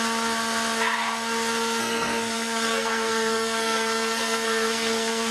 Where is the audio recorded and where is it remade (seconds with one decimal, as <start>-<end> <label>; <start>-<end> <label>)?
0.0-1.8 recorded; 1.8-5.3 remade